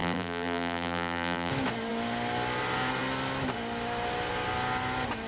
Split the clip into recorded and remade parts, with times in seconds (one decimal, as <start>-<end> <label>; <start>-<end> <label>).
0.0-1.5 remade; 1.5-5.3 recorded